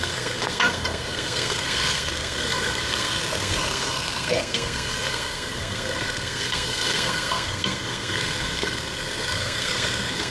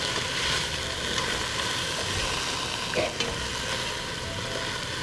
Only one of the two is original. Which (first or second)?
second